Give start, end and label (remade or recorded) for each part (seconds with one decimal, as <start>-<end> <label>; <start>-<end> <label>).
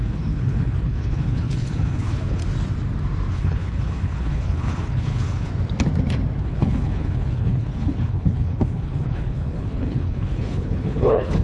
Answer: 0.0-2.4 remade; 2.4-3.3 recorded; 3.3-5.5 remade; 5.5-6.4 recorded; 6.4-11.4 remade